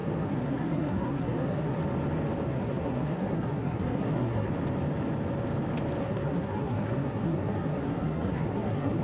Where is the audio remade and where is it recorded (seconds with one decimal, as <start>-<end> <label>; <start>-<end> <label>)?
0.0-1.8 remade; 1.8-2.5 recorded; 2.5-4.5 remade; 4.5-6.0 recorded; 6.0-9.0 remade